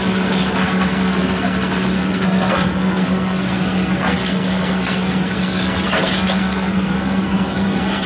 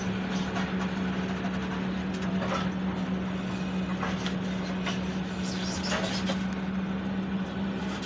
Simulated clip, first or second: first